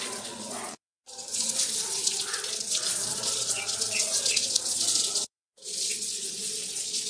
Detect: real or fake fake